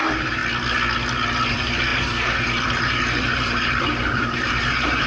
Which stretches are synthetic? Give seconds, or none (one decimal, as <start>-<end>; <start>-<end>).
0.0-0.4; 1.5-5.1